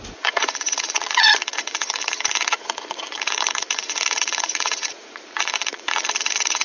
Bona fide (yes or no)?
no